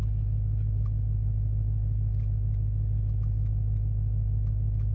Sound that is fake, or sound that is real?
real